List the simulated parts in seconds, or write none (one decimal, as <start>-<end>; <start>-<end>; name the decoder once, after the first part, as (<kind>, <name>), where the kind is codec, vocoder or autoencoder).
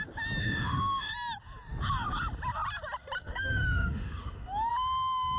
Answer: 0.4-1.1 (autoencoder, DAC-VAE); 3.2-4.7